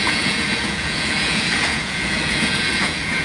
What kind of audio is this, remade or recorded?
remade